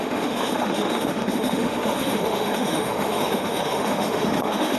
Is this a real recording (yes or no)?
no